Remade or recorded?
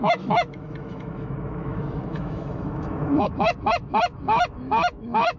remade